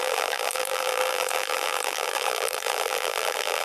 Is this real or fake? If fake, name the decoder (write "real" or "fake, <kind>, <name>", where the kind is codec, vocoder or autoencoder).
fake, vocoder, BigVGAN v2